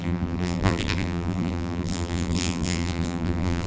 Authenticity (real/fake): fake